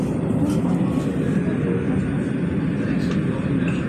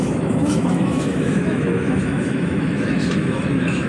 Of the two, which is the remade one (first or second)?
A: second